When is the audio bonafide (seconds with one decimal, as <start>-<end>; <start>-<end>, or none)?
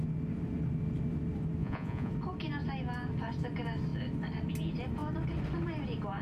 0.0-1.6; 2.1-6.2